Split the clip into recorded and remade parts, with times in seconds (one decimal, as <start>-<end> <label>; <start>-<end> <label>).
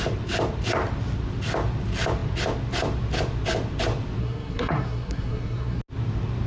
0.0-4.2 recorded; 4.2-5.8 remade; 5.8-6.5 recorded